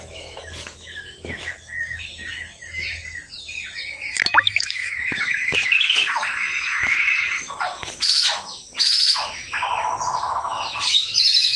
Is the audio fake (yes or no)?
yes